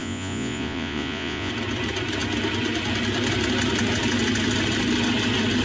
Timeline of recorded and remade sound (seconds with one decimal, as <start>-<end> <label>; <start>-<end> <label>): 0.0-1.5 remade; 1.5-5.6 recorded